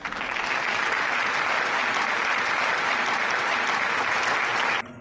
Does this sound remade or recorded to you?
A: recorded